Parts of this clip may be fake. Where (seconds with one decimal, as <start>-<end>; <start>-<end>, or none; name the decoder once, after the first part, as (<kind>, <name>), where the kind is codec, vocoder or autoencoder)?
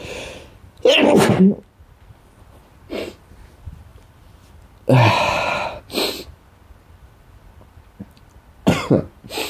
none